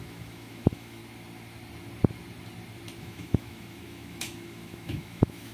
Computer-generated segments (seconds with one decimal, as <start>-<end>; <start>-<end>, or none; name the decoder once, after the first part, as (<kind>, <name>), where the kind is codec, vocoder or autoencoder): 0.0-1.0 (autoencoder, DAC-VAE); 3.0-5.5